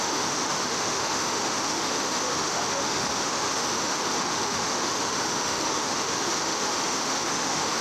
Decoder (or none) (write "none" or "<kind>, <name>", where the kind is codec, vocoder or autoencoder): autoencoder, DAC-VAE